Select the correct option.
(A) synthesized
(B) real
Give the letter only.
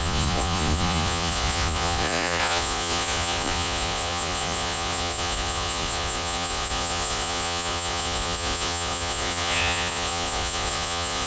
A